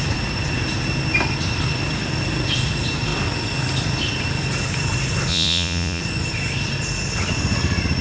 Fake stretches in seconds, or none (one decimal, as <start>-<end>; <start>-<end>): 5.3-6.0